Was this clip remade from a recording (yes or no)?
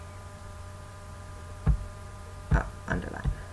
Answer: yes